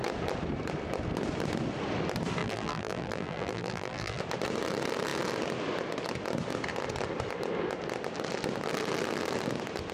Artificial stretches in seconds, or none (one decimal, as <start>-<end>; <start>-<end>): 2.4-4.2